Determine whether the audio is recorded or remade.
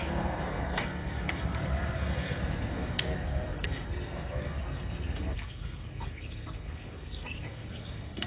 remade